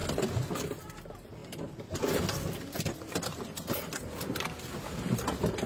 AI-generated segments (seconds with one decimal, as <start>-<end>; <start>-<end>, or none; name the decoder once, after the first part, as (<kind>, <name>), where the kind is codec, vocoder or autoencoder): none